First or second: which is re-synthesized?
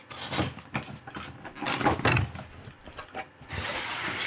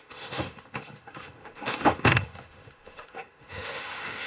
second